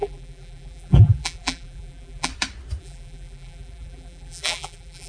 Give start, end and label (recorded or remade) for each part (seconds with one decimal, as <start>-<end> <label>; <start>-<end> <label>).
0.0-2.3 remade; 2.3-2.8 recorded; 2.8-5.1 remade